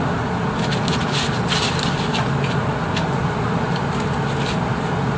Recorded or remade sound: remade